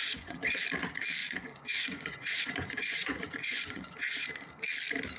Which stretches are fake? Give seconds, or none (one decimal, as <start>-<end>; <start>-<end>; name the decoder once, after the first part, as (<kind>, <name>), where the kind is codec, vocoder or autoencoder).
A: 0.0-0.5 (vocoder, Vocos); 1.2-4.3